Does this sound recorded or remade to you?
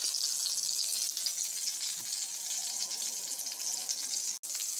recorded